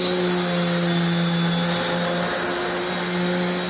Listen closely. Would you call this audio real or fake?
real